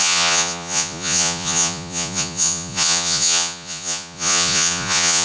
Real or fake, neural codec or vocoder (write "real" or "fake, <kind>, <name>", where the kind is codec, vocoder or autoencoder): fake, vocoder, Vocos